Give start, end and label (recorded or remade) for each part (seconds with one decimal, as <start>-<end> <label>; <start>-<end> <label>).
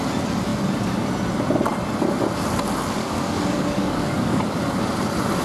0.0-3.0 recorded; 3.0-4.8 remade; 4.8-5.4 recorded